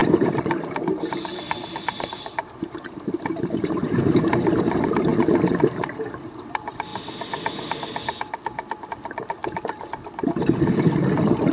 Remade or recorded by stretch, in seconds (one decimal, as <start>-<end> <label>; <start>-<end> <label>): 0.0-5.1 remade; 5.1-5.8 recorded; 5.8-6.9 remade; 6.9-8.9 recorded; 8.9-11.5 remade